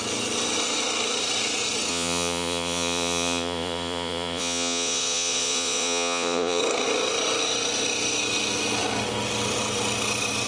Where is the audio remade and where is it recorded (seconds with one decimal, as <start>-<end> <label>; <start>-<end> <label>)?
0.0-1.9 recorded; 1.9-6.6 remade; 6.6-10.5 recorded